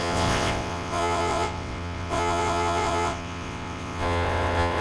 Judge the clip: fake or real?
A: fake